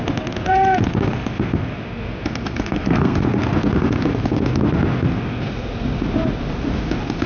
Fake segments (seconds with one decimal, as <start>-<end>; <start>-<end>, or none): 2.4-3.2